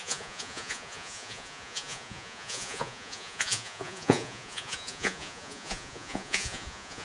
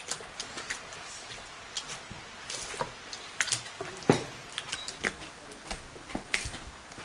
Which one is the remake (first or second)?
first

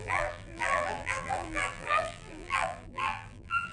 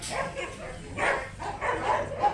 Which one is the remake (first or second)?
first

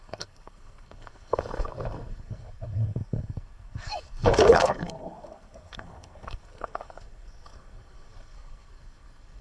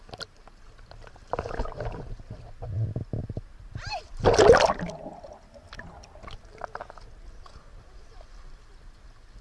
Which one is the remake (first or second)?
first